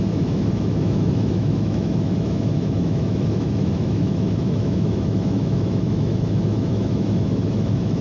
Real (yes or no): no